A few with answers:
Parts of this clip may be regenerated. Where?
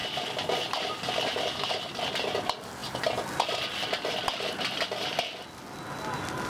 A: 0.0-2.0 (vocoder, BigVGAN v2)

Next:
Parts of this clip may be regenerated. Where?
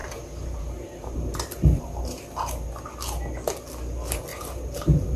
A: 0.0-2.7 (vocoder, BigVGAN v2); 4.3-5.2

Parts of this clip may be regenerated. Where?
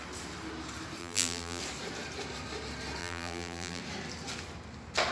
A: 1.0-1.6 (vocoder, BigVGAN v2); 3.0-3.8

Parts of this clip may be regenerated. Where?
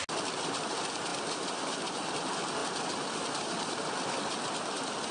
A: 1.1-1.9 (vocoder, BigVGAN v2)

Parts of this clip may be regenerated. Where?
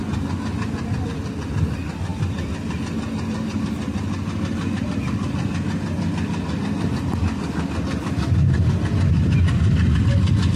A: none